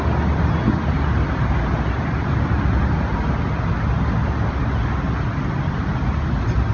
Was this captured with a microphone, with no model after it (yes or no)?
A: yes